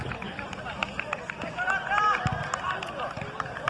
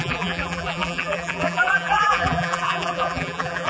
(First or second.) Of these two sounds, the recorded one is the first